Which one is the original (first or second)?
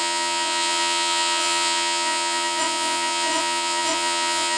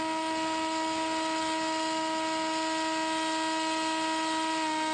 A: second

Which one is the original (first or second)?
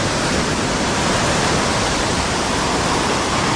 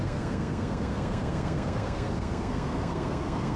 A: first